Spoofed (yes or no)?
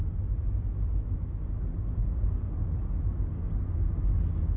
no